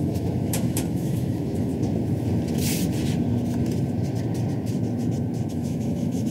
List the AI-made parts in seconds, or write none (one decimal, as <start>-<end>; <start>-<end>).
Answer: 0.0-1.7; 5.5-6.3